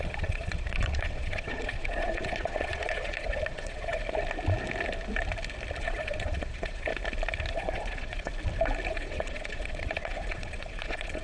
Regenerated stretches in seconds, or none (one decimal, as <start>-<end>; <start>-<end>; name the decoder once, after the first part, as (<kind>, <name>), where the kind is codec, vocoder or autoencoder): 0.0-4.0 (vocoder, Vocos); 5.8-6.9; 7.5-8.3; 8.9-11.2